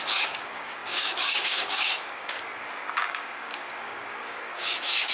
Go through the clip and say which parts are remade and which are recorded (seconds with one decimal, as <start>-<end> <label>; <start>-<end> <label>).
0.0-5.1 remade